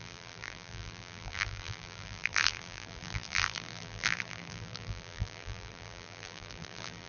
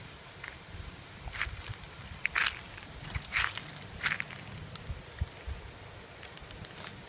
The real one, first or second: second